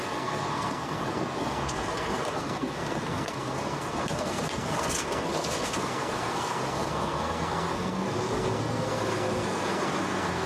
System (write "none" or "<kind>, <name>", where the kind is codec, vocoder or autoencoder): codec, SNAC